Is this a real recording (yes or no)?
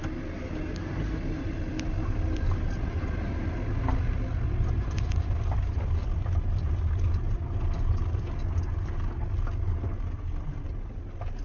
yes